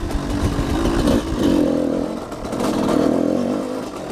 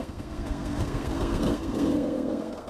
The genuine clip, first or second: first